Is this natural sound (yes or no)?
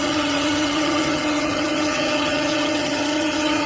no